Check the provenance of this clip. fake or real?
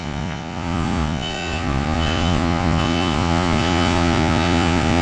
fake